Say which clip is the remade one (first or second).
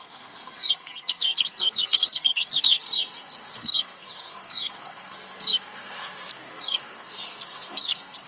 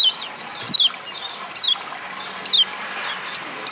first